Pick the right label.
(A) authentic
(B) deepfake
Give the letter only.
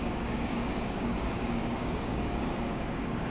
B